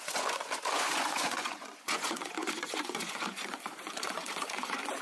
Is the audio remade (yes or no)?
yes